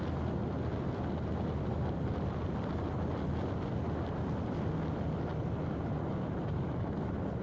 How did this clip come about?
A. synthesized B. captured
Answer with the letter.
B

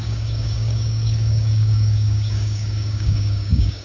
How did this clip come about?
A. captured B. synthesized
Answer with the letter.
B